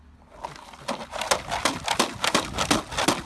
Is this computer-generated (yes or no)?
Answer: no